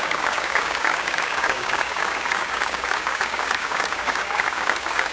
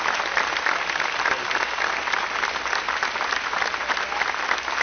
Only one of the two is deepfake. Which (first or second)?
first